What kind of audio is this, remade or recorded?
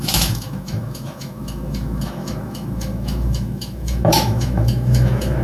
remade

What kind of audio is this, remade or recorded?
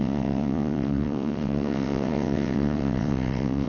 remade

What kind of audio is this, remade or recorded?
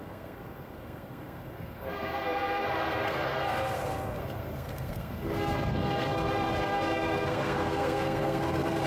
remade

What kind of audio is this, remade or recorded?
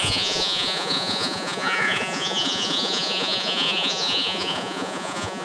remade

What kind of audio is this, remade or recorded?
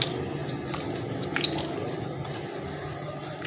recorded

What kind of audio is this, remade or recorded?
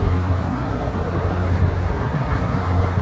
remade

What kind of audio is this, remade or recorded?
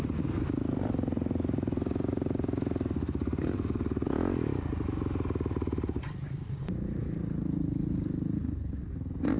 recorded